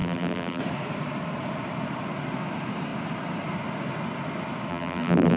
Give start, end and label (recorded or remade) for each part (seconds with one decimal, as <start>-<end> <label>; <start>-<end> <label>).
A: 0.0-0.6 remade; 0.6-4.7 recorded; 4.7-5.4 remade